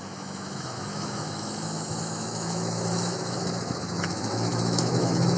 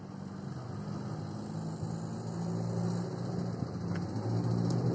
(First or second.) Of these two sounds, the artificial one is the first